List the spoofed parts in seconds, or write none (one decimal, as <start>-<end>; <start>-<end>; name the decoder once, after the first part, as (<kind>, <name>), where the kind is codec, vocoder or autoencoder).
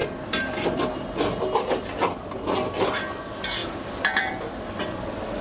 3.2-5.4 (vocoder, BigVGAN v2)